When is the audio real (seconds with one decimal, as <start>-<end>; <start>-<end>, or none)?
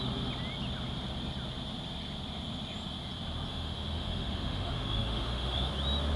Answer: 0.0-3.5; 5.7-6.2